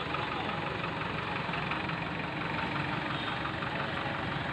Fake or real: real